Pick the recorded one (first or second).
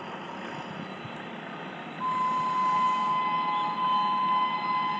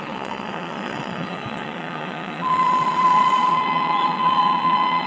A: first